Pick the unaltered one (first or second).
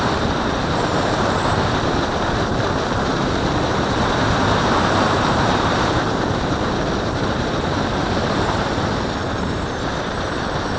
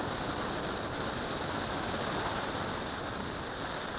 second